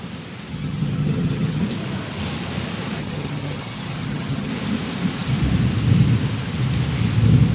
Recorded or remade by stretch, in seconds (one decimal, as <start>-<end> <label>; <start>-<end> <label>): 0.0-0.5 recorded; 0.5-1.6 remade; 1.6-3.0 recorded; 3.0-4.5 remade; 4.5-7.5 recorded

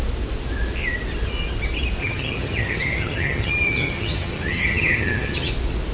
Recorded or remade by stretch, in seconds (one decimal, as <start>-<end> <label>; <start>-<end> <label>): 0.0-2.0 recorded; 2.0-5.5 remade; 5.5-5.9 recorded

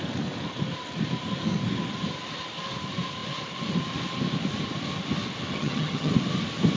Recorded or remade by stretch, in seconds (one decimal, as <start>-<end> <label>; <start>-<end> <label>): 0.0-5.5 recorded; 5.5-6.1 remade; 6.1-6.8 recorded

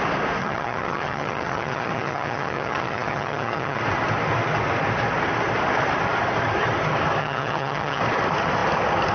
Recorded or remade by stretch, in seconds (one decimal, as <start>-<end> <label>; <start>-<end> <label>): 0.0-0.4 recorded; 0.4-3.8 remade; 3.8-7.2 recorded; 7.2-8.0 remade; 8.0-9.1 recorded

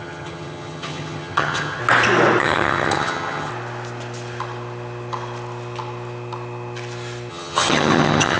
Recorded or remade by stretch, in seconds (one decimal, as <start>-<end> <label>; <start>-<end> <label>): 0.0-1.8 remade; 1.8-2.4 recorded; 2.4-3.5 remade; 3.5-7.3 recorded; 7.3-8.4 remade